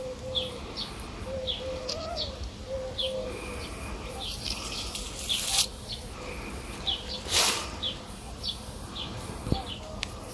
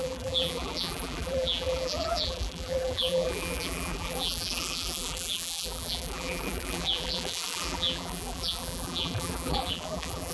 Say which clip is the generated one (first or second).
second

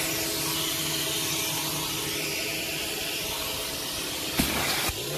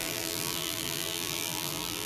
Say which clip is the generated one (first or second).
second